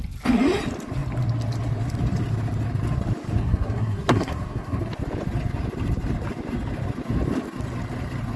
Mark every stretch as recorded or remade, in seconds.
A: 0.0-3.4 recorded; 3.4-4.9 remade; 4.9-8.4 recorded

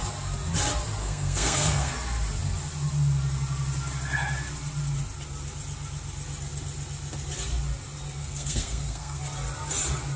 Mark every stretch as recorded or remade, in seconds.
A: 0.0-1.0 recorded; 1.0-1.9 remade; 1.9-8.2 recorded; 8.2-9.2 remade; 9.2-10.2 recorded